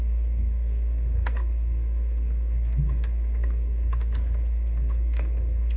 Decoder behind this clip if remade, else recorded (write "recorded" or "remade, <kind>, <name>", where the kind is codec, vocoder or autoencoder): remade, codec, SNAC